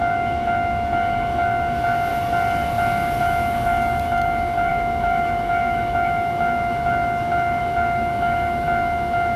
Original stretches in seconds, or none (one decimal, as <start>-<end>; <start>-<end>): 2.1-3.2